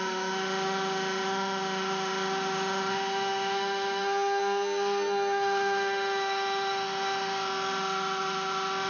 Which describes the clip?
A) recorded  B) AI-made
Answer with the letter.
B